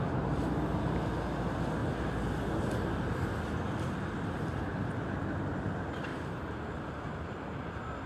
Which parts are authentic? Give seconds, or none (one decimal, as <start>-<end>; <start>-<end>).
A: 0.0-6.1; 6.7-8.1